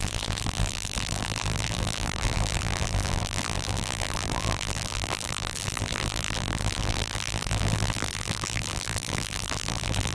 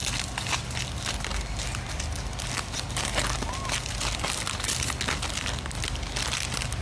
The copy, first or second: first